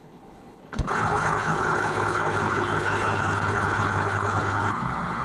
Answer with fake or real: fake